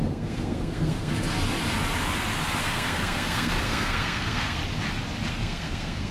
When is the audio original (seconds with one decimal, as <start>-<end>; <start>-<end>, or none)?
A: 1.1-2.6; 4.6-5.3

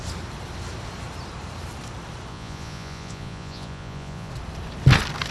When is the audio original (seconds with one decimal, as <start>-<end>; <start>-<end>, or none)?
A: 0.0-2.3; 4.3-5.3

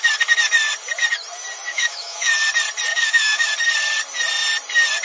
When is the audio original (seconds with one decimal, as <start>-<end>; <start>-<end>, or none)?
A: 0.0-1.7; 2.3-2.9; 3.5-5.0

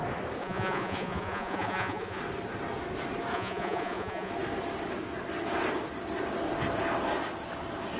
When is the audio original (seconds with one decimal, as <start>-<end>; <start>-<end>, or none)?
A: 0.0-0.4; 2.2-3.3; 4.3-8.0

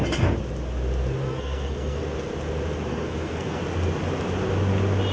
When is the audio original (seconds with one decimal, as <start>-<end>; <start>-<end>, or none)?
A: 0.0-1.3; 2.0-2.9; 3.6-5.1

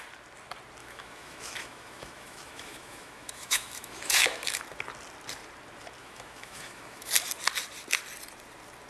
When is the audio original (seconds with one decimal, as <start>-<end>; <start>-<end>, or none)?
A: 0.0-0.8; 4.6-6.0; 7.1-8.9